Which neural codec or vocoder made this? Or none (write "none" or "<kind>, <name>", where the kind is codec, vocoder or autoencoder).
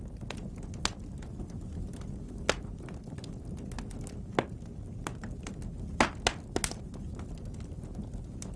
none